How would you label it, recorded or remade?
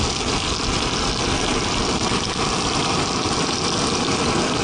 recorded